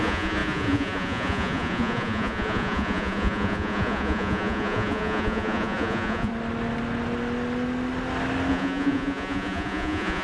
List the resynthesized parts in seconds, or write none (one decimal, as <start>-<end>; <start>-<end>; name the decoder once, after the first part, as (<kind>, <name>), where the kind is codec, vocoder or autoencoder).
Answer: 0.0-6.3 (vocoder, Vocos); 8.5-10.2